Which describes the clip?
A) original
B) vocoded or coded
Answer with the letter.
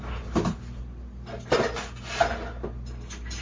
A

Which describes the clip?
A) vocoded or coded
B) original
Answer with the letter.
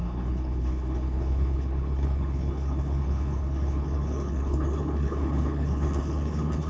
A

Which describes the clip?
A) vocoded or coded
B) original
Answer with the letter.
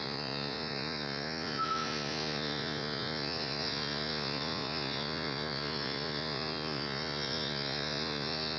A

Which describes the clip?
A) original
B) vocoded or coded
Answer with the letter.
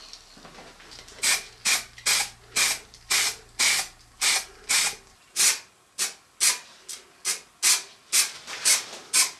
A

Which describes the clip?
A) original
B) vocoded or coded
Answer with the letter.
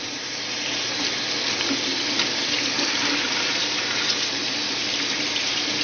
A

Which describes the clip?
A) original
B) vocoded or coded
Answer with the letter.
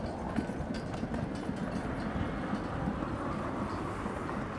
A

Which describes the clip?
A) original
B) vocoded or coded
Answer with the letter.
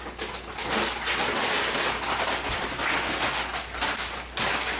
A